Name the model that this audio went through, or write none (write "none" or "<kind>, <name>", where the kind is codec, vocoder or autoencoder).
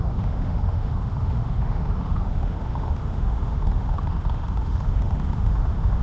autoencoder, DAC-VAE